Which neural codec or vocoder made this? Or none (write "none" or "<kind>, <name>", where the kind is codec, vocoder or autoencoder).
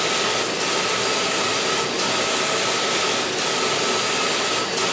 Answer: none